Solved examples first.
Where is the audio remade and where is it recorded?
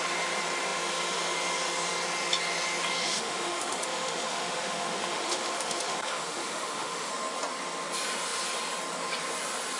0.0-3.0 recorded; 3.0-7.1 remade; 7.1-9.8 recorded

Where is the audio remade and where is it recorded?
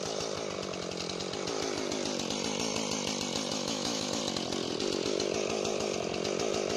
0.0-3.5 recorded; 3.5-4.2 remade; 4.2-6.8 recorded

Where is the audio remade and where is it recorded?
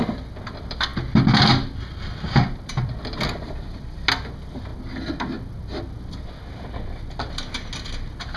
0.0-8.4 recorded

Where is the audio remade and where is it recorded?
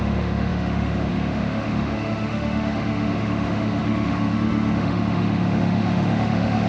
0.0-6.7 remade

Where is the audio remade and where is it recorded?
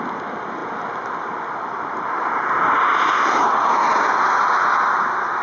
0.0-5.4 recorded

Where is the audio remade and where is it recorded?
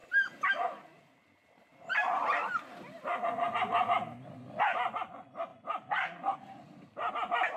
0.0-7.6 recorded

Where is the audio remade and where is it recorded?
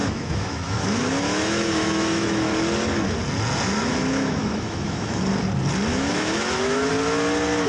0.0-2.5 remade; 2.5-4.0 recorded; 4.0-5.2 remade; 5.2-5.9 recorded; 5.9-6.9 remade; 6.9-7.7 recorded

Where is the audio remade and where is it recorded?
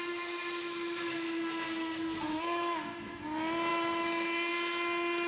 0.0-0.6 recorded; 0.6-3.2 remade; 3.2-5.3 recorded